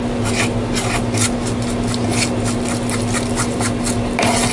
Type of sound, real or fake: real